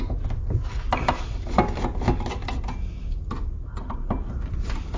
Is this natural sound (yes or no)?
yes